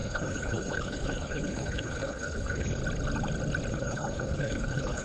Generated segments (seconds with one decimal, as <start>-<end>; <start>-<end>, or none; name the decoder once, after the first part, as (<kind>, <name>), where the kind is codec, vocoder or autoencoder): 0.0-2.8 (codec, HILCodec); 3.7-5.0